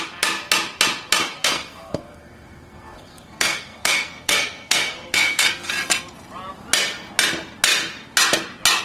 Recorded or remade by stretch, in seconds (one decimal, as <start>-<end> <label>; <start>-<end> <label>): 0.0-1.2 recorded; 1.2-5.7 remade; 5.7-8.8 recorded

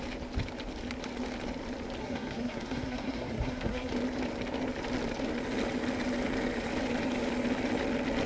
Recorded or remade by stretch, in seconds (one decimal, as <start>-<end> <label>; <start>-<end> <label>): 0.0-2.0 recorded; 2.0-3.9 remade; 3.9-8.3 recorded

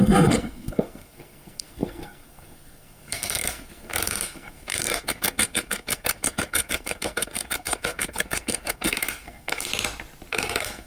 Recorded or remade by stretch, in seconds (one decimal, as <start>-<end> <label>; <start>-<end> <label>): 0.0-9.7 remade; 9.7-10.3 recorded; 10.3-10.9 remade

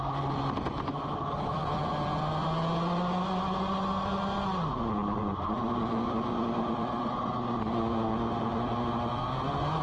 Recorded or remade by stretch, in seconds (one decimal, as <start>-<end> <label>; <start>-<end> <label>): 0.0-9.8 recorded

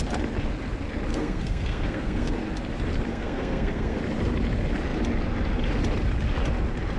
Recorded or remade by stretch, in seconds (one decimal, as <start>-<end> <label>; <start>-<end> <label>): 0.0-1.1 recorded; 1.1-2.3 remade; 2.3-3.1 recorded; 3.1-4.0 remade; 4.0-7.0 recorded

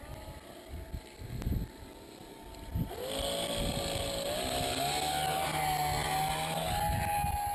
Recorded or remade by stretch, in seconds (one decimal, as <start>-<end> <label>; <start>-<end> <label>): 0.0-7.5 recorded

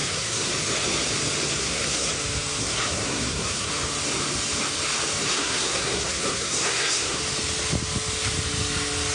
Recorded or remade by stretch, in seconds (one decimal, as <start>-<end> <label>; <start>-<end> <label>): 0.0-0.5 remade; 0.5-1.6 recorded; 1.6-2.1 remade; 2.1-2.6 recorded; 2.6-3.7 remade; 3.7-5.2 recorded; 5.2-7.2 remade; 7.2-9.1 recorded

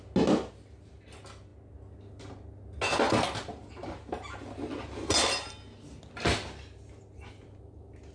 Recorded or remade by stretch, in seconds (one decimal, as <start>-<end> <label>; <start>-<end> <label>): 0.0-8.1 recorded